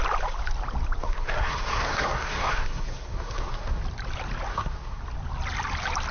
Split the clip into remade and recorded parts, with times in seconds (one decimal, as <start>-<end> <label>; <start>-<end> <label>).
0.0-1.0 recorded; 1.0-3.8 remade; 3.8-4.5 recorded; 4.5-5.0 remade; 5.0-6.1 recorded